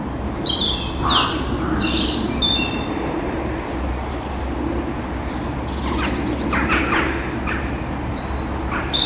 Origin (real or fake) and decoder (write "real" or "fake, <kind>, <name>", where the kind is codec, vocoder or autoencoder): real